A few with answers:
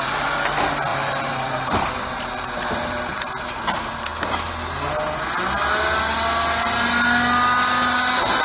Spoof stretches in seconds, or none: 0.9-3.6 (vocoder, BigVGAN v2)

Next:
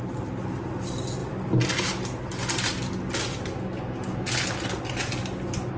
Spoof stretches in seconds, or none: none